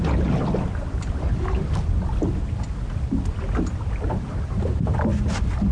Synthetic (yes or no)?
no